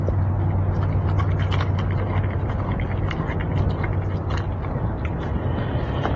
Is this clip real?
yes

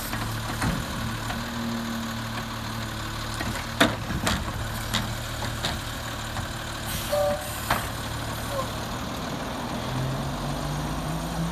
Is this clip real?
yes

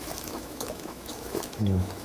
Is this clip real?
no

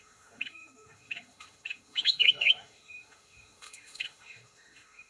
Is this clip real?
no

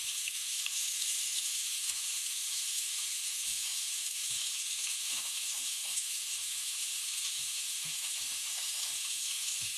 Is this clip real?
no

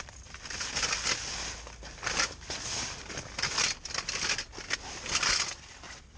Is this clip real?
yes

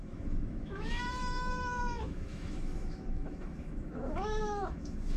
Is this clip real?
no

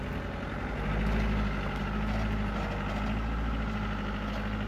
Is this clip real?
yes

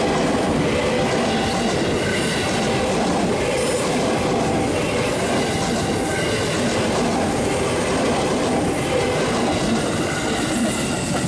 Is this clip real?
yes